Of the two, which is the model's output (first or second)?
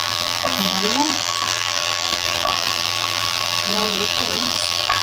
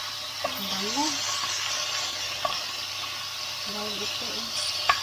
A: first